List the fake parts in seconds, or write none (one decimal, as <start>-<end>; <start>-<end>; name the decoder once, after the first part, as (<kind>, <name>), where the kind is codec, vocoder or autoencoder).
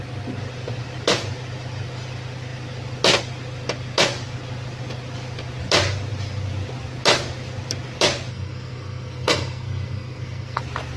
8.3-10.6 (codec, SNAC)